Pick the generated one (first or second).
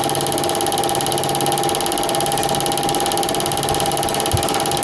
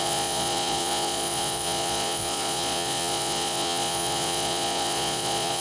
second